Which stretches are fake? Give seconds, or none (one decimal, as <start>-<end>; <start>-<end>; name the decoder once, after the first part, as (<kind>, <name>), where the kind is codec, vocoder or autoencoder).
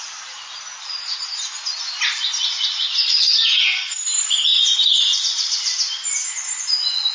none